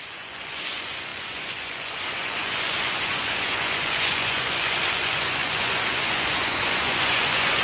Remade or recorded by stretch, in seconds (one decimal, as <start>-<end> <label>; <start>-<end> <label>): 0.0-7.6 remade